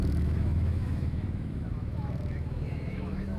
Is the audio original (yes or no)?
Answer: no